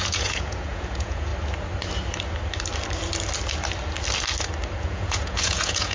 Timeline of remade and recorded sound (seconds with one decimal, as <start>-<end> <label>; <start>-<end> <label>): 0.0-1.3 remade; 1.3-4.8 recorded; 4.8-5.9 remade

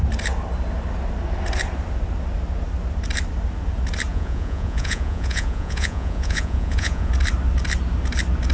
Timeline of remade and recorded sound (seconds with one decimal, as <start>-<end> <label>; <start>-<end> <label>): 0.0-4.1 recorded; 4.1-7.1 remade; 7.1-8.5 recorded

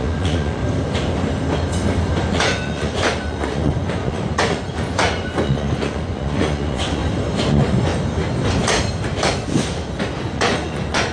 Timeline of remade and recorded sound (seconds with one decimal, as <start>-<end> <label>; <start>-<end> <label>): 0.0-0.6 remade; 0.6-2.3 recorded; 2.3-7.0 remade; 7.0-7.5 recorded; 7.5-7.9 remade; 7.9-10.2 recorded; 10.2-11.1 remade

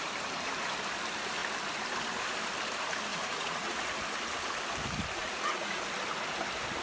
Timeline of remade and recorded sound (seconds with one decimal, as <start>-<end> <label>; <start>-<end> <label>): 0.0-3.1 recorded; 3.1-3.8 remade; 3.8-5.2 recorded; 5.2-5.8 remade; 5.8-6.8 recorded